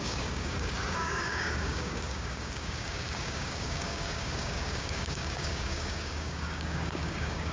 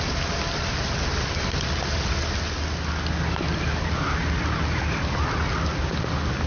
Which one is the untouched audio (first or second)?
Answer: second